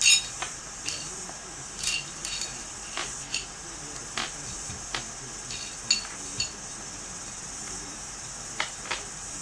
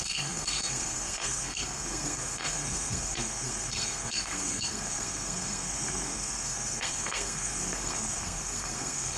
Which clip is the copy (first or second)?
second